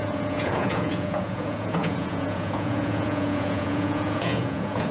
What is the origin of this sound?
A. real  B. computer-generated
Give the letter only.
B